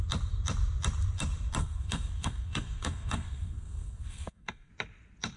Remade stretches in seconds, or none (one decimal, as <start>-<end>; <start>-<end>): 1.6-4.7